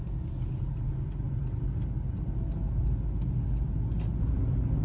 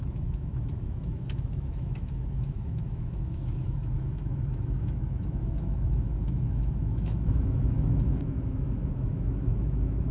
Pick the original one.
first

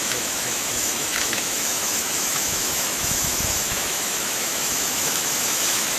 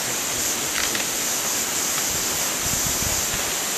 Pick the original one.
second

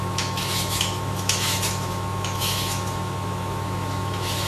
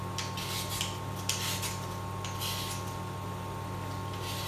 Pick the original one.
second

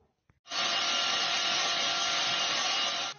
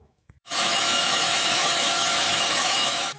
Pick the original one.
first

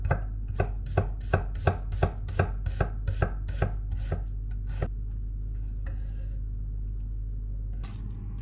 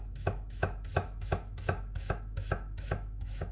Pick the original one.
first